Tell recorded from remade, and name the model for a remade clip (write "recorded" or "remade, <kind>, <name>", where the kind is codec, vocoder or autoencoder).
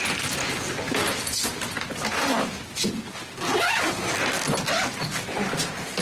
recorded